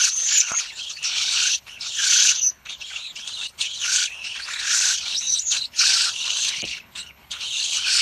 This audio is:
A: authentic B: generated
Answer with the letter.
B